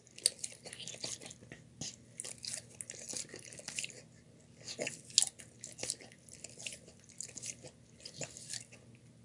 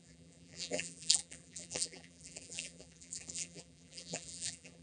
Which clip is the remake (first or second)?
second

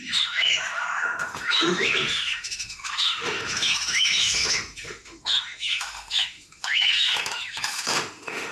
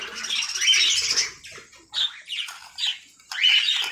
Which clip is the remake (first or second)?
first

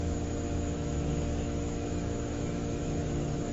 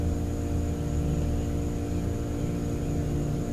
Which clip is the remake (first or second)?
first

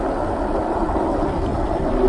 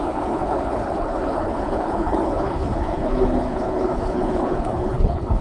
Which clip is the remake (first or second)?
second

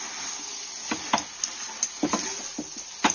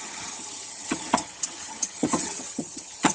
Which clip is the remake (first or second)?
second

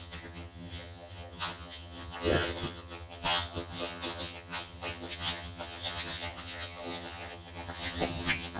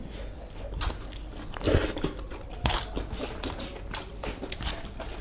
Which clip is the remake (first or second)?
first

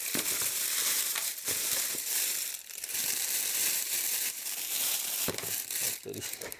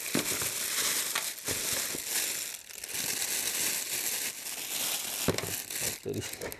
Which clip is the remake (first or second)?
first